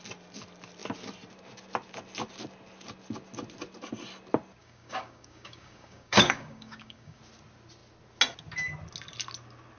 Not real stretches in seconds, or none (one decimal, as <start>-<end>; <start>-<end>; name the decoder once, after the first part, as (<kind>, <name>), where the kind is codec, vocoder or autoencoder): 4.6-7.2 (codec, DAC)